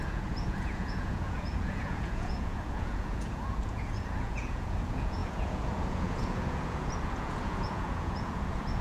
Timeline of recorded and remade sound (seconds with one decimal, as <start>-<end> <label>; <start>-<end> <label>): 0.0-8.8 remade